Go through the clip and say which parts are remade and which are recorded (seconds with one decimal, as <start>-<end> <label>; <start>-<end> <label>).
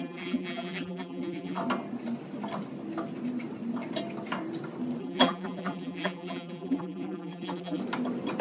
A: 0.0-1.6 remade; 1.6-5.0 recorded; 5.0-7.8 remade; 7.8-8.4 recorded